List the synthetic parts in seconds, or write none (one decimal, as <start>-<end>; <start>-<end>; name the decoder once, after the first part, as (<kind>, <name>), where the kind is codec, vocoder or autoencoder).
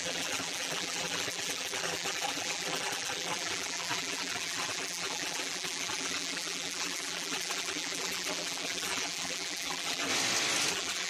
0.0-10.1 (vocoder, BigVGAN v2); 10.7-11.1